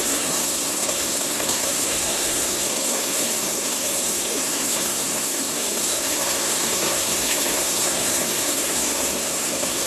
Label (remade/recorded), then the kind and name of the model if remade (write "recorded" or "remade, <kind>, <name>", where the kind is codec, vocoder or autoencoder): remade, codec, SNAC